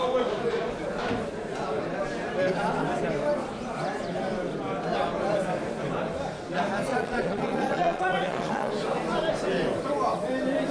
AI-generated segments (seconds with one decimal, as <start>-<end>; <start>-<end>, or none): 6.9-8.7

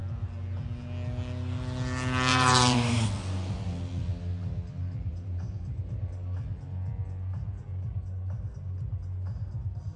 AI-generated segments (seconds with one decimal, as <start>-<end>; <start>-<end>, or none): 2.3-3.1; 5.1-6.0